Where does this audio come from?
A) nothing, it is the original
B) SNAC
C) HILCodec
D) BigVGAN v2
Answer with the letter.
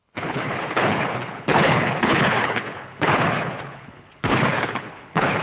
C